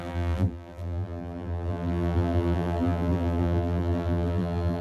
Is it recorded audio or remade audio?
remade